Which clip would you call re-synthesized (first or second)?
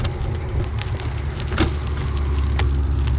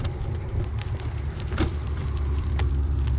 second